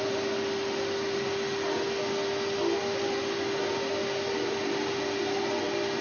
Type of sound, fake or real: real